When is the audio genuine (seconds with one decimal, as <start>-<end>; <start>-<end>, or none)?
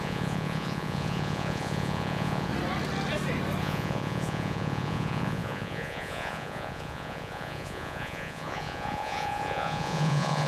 2.5-3.6